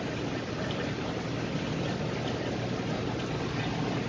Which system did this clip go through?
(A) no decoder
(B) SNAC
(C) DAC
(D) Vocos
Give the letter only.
A